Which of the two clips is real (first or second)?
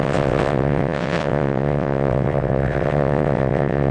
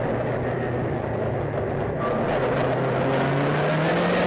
second